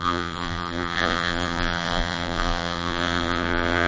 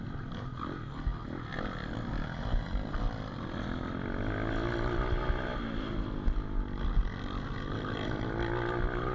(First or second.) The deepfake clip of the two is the first